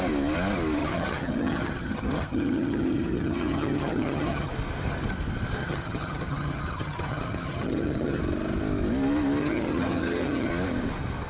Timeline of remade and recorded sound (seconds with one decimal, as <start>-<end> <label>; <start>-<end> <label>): 0.0-0.8 recorded; 0.8-4.5 remade; 4.5-5.6 recorded; 5.6-8.2 remade; 8.2-9.4 recorded; 9.4-10.5 remade; 10.5-11.3 recorded